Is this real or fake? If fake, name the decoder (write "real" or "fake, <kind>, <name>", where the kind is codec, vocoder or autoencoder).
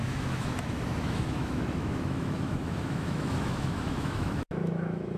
fake, autoencoder, DAC-VAE